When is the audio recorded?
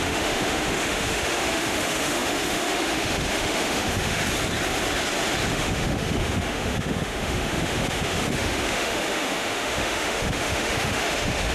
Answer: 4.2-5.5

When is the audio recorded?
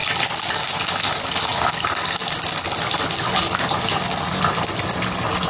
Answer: 0.0-5.5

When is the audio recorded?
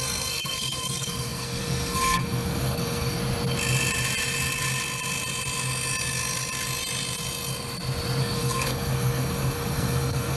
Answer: 3.2-8.2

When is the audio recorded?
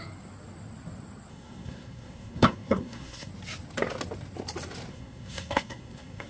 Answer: 0.0-1.3; 3.3-4.9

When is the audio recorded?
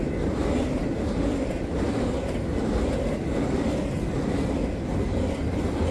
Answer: 0.0-5.9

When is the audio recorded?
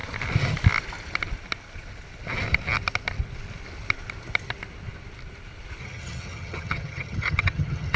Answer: 0.0-5.8